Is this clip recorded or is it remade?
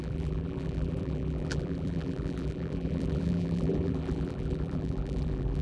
remade